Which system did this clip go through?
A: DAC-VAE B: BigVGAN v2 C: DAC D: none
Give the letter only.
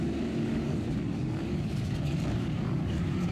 C